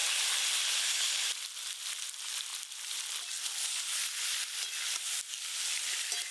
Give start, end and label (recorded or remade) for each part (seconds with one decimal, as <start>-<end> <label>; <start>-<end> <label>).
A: 0.0-6.3 recorded